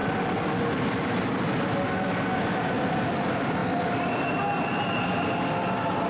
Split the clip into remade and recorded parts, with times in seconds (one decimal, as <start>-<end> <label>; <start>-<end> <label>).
0.0-6.1 recorded